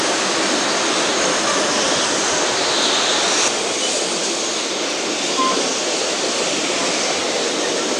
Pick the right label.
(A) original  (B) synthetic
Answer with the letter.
A